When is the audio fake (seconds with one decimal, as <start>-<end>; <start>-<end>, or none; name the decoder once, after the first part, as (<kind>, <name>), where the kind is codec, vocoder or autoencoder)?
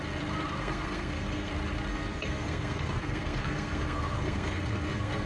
0.6-1.5 (codec, SNAC); 1.9-5.3